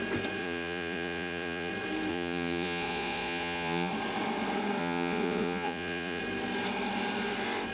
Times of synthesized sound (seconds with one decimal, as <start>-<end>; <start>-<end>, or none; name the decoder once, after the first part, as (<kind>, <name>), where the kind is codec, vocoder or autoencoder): 0.4-1.7 (vocoder, Vocos); 2.1-3.9; 4.8-6.2